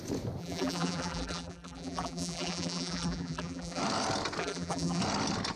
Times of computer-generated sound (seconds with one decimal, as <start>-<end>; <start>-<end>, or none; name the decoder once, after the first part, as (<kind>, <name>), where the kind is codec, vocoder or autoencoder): 0.4-3.8 (vocoder, BigVGAN v2); 4.4-5.0